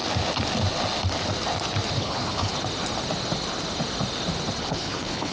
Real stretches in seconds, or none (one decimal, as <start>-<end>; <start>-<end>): 0.0-2.0; 2.5-4.6